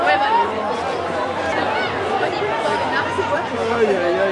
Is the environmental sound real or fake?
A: real